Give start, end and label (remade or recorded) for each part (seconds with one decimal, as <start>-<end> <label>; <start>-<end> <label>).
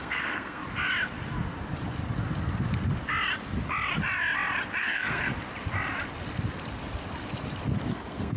0.0-0.6 remade; 0.6-4.8 recorded; 4.8-5.3 remade; 5.3-7.9 recorded; 7.9-8.4 remade